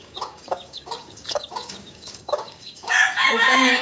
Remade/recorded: remade